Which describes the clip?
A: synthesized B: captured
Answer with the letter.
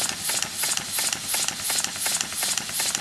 B